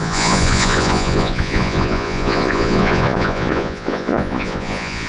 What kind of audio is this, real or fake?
fake